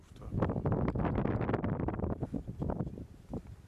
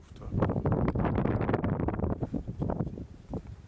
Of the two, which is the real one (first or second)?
first